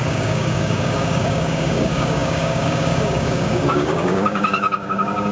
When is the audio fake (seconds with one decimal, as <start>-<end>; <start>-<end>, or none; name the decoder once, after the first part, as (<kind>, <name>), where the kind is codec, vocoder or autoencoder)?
0.0-5.3 (codec, DAC)